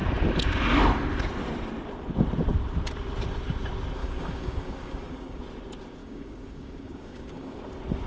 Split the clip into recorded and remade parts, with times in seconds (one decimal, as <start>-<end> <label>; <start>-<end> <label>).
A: 0.0-4.0 recorded; 4.0-5.4 remade; 5.4-6.0 recorded; 6.0-7.6 remade; 7.6-8.1 recorded